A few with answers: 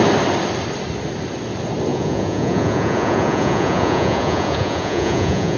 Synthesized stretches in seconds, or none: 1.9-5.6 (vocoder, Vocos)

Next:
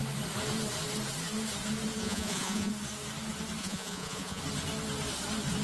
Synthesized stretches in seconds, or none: 2.0-2.7 (vocoder, Vocos); 3.6-4.4

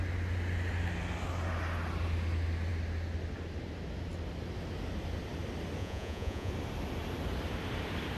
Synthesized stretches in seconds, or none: 5.8-6.5 (vocoder, Vocos)

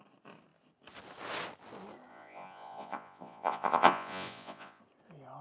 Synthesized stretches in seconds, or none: 2.1-4.8 (vocoder, Vocos)

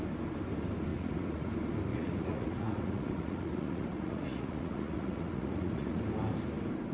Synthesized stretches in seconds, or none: 0.9-1.5 (vocoder, Vocos); 1.9-6.0